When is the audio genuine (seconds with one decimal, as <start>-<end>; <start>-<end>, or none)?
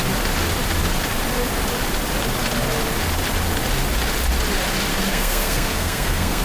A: 0.0-4.9